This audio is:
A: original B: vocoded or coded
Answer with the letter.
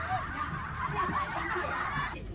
A